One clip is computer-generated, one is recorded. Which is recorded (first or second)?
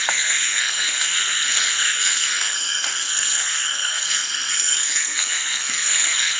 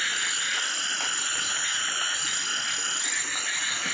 second